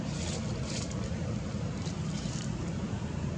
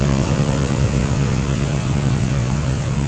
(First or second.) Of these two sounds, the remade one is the second